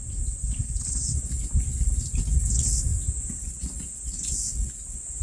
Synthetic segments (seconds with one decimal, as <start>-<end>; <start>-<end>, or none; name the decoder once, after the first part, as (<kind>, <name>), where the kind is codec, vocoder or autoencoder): none

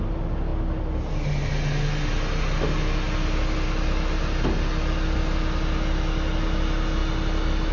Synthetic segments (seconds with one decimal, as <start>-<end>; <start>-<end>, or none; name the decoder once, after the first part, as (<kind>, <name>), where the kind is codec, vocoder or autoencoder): none

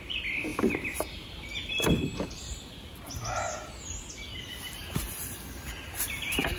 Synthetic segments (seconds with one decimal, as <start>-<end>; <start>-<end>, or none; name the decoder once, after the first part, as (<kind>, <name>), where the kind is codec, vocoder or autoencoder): none

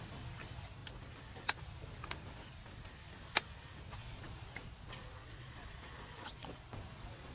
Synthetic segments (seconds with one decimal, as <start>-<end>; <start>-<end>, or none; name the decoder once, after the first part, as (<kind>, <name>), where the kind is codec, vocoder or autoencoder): 4.0-7.3 (vocoder, Vocos)

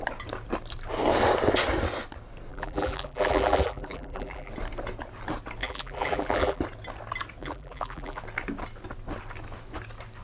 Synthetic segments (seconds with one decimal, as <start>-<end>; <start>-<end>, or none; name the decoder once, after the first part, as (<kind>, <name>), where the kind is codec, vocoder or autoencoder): 2.5-4.5 (vocoder, BigVGAN v2); 5.6-6.6; 7.4-8.2